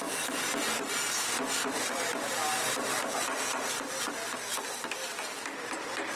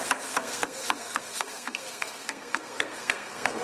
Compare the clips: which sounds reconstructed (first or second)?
second